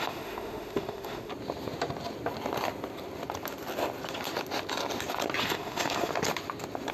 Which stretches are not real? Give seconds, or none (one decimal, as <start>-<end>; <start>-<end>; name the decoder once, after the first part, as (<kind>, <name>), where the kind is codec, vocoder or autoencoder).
0.0-1.3 (autoencoder, DAC-VAE); 5.4-6.1